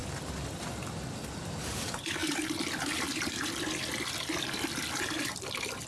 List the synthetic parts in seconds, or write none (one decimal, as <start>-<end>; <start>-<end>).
0.0-5.9